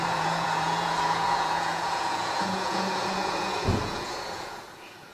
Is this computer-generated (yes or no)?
yes